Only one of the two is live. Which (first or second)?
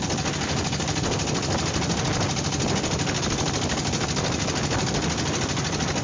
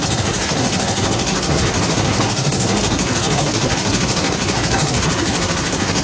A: first